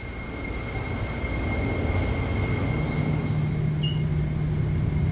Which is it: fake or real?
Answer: real